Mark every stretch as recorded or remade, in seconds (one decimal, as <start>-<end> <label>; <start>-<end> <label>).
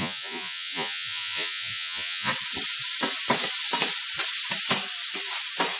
0.0-2.3 remade; 2.3-5.8 recorded